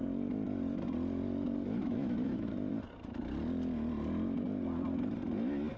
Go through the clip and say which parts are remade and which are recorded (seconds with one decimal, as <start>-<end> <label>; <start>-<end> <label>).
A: 0.0-1.8 recorded; 1.8-2.7 remade; 2.7-5.8 recorded